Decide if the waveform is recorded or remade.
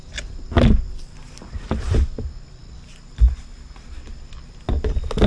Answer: recorded